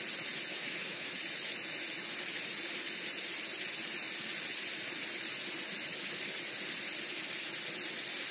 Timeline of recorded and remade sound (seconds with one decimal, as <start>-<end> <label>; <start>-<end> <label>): 0.0-0.5 recorded; 0.5-1.1 remade; 1.1-8.3 recorded